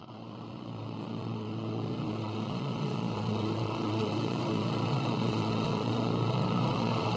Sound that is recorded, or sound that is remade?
remade